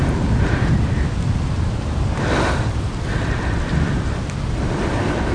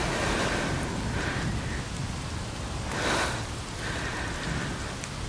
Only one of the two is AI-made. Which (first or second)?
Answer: first